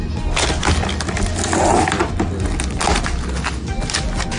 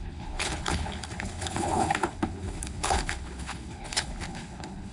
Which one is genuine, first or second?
first